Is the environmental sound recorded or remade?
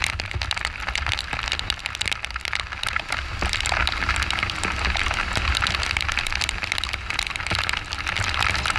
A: recorded